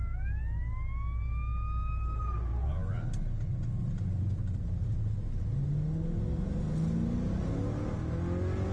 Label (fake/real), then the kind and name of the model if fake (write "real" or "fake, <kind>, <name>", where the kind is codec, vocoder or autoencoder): real